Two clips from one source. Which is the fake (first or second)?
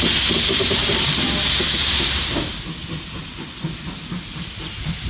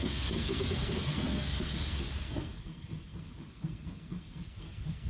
second